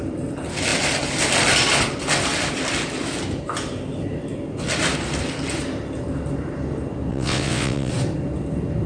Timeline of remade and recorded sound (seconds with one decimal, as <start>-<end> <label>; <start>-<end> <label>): 0.0-7.1 recorded; 7.1-7.9 remade; 7.9-8.9 recorded